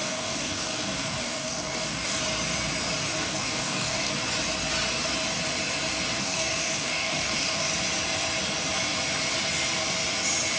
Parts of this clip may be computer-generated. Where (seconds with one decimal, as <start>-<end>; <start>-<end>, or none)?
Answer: 0.0-2.2; 3.2-4.1; 6.2-7.7